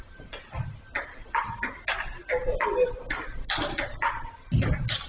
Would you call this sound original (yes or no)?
yes